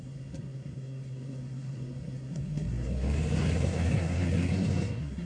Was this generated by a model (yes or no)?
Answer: yes